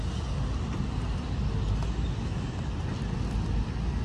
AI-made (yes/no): no